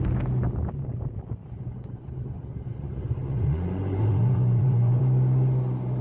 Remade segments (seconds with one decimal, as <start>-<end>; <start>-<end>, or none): 1.4-5.0